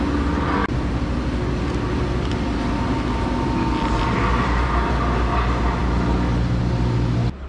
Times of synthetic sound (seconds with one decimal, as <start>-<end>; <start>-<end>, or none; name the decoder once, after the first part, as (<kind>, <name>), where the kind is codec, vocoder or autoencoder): none